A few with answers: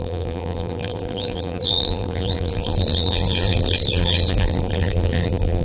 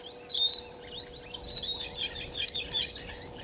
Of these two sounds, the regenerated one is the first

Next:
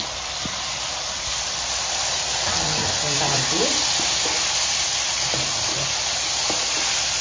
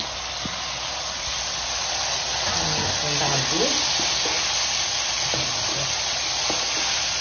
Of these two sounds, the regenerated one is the first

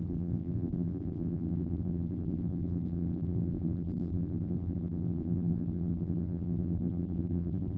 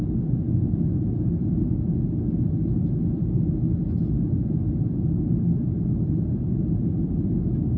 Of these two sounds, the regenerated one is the first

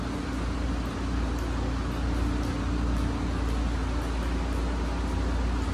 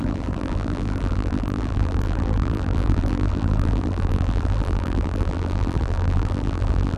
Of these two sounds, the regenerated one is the second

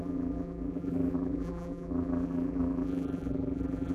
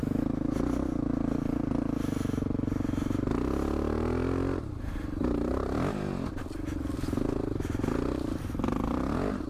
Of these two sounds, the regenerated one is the first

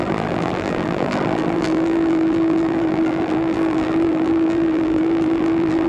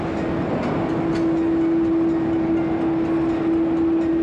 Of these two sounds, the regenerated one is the first